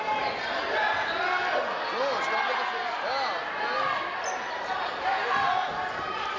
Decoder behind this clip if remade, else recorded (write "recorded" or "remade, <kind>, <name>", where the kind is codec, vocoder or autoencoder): recorded